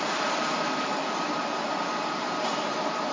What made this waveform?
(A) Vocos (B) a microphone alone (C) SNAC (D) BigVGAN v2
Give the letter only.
D